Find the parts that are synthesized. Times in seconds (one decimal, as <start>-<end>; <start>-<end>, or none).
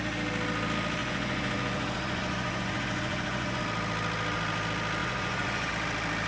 1.0-3.6; 5.0-5.7